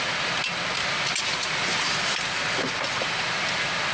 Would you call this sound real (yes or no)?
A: yes